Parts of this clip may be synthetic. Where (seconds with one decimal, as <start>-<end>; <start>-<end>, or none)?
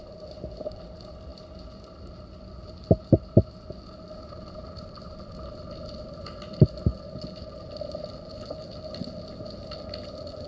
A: none